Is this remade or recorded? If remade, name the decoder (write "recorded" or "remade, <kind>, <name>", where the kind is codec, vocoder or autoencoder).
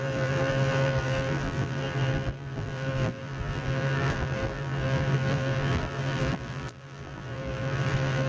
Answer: remade, vocoder, BigVGAN v2